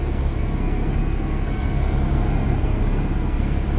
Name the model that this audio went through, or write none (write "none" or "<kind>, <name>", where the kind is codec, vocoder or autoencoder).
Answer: codec, SNAC